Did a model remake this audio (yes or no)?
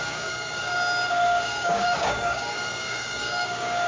yes